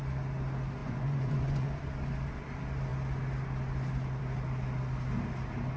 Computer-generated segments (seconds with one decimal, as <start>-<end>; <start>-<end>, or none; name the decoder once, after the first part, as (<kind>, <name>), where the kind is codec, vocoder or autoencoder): 0.8-1.7 (vocoder, Vocos)